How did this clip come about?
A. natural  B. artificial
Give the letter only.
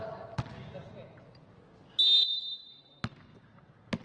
A